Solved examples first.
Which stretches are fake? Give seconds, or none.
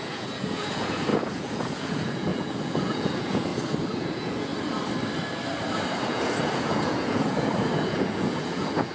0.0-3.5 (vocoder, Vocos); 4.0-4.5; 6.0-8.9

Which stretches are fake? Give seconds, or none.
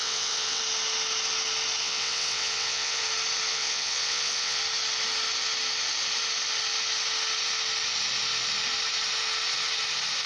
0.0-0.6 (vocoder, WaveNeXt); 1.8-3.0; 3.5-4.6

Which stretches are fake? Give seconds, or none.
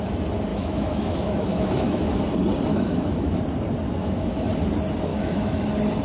0.5-2.2 (autoencoder, DAC-VAE); 2.7-3.4; 4.0-4.5; 5.1-5.6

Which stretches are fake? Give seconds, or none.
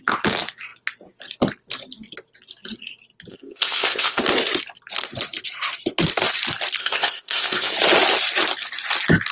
3.3-4.2 (codec, ZipCodec); 6.8-7.7